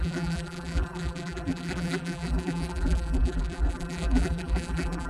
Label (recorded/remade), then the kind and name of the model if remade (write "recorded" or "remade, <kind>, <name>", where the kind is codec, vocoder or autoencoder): remade, vocoder, BigVGAN v2